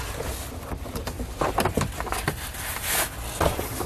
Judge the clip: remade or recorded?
recorded